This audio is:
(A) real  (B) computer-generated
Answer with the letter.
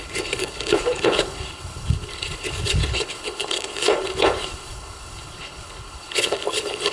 B